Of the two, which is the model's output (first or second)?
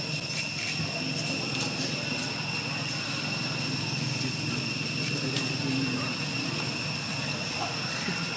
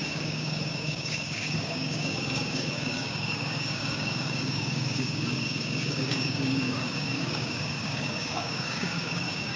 second